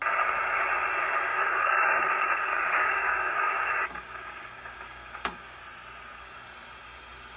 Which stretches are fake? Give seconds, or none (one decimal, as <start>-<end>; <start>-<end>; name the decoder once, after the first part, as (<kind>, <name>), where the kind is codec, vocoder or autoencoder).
1.3-5.6 (codec, DAC)